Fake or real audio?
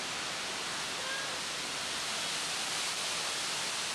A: real